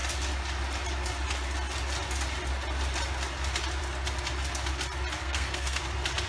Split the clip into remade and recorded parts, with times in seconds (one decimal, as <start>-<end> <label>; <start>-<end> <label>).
0.0-5.2 recorded; 5.2-5.8 remade; 5.8-6.3 recorded